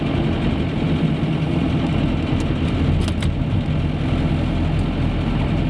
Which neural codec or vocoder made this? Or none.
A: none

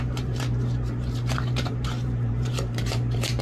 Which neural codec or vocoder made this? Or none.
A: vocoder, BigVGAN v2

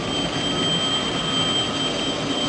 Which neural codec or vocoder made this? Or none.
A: none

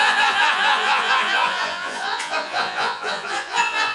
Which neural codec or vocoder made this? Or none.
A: vocoder, Vocos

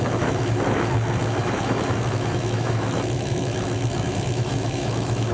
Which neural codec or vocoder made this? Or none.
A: autoencoder, DAC-VAE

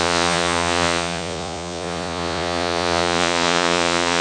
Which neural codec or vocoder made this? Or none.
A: vocoder, Vocos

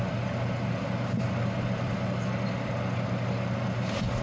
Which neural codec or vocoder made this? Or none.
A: none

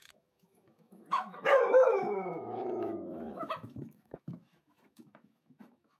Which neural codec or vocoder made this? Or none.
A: autoencoder, DAC-VAE